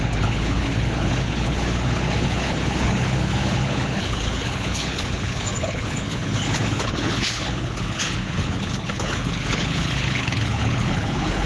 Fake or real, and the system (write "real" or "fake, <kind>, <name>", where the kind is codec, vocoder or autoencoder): fake, codec, HILCodec